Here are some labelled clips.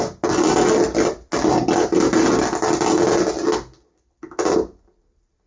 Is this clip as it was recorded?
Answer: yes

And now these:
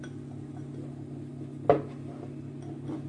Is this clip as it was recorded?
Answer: yes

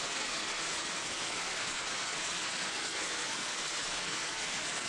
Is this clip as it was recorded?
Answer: no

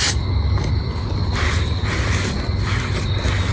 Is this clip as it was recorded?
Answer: yes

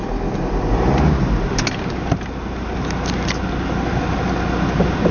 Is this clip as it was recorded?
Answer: yes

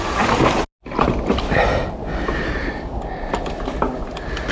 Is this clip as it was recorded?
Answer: yes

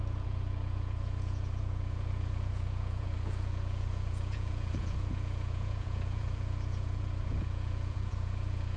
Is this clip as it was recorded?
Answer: no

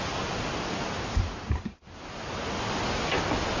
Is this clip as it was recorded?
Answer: yes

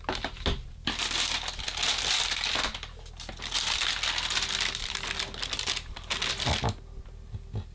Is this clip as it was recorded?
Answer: yes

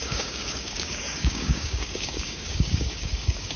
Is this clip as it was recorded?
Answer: no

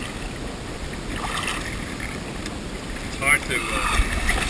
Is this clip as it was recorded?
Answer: yes